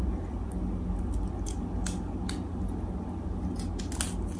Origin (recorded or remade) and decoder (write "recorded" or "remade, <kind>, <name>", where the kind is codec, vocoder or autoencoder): recorded